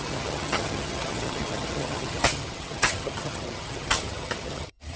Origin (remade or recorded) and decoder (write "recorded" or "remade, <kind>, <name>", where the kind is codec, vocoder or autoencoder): remade, vocoder, HiFi-GAN